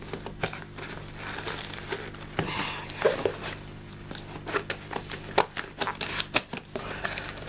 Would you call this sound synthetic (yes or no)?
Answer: no